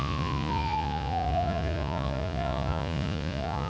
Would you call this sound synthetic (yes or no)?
yes